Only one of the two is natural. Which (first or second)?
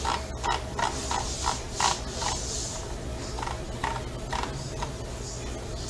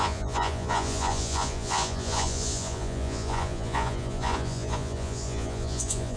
first